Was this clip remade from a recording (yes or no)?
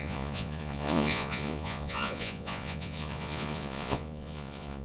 yes